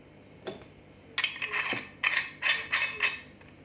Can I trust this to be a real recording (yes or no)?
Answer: yes